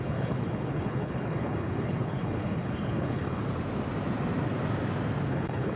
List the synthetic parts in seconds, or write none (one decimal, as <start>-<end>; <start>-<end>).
0.0-3.4; 5.3-5.8